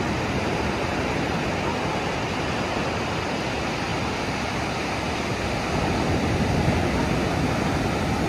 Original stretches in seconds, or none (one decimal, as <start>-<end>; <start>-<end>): 0.0-3.9; 5.2-8.3